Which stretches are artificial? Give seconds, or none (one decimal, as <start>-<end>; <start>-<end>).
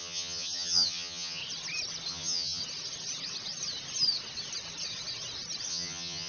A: 0.0-1.4; 2.1-2.6; 5.7-6.3